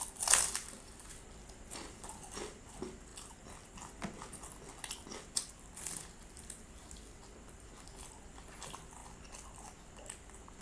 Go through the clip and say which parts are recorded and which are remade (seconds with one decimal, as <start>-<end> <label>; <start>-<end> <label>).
0.0-10.6 recorded